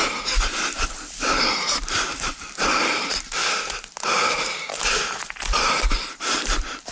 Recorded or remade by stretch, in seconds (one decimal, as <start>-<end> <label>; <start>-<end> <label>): 0.0-3.4 remade; 3.4-4.5 recorded; 4.5-6.9 remade